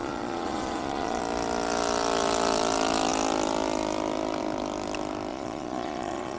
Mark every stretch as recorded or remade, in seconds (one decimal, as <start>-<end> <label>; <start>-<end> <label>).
0.0-1.2 remade; 1.2-5.3 recorded; 5.3-6.4 remade